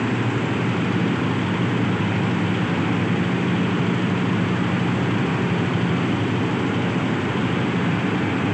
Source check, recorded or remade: recorded